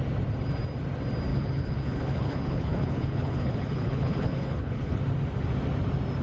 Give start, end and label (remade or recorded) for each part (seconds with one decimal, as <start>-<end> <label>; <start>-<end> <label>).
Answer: 0.0-1.3 recorded; 1.3-5.0 remade; 5.0-6.2 recorded